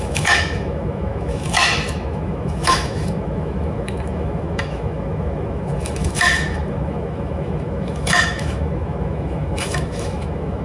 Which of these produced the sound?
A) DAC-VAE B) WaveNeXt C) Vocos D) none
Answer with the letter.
A